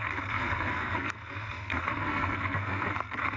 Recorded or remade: remade